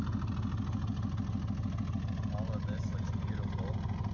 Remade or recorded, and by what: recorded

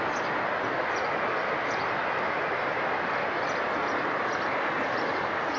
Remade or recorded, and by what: recorded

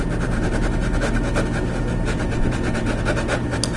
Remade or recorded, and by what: recorded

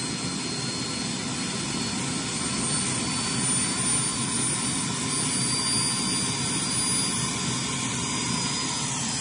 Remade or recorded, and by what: recorded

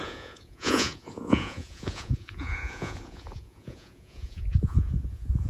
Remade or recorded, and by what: remade, vocoder, Vocos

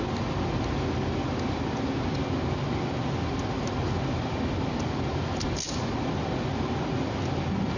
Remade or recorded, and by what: recorded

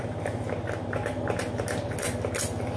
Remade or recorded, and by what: recorded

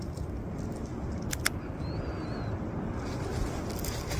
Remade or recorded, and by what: recorded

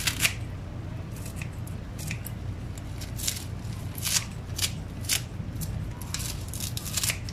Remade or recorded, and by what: recorded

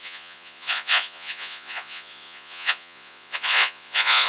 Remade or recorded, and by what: remade, vocoder, Vocos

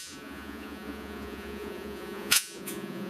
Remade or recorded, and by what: remade, vocoder, Vocos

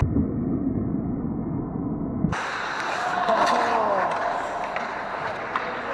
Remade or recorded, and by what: recorded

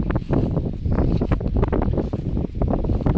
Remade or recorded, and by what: recorded